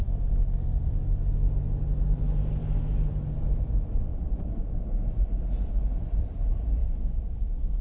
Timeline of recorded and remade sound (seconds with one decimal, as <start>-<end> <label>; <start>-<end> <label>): 0.0-1.0 remade; 1.0-2.0 recorded; 2.0-2.6 remade; 2.6-3.6 recorded; 3.6-4.1 remade; 4.1-5.8 recorded; 5.8-7.8 remade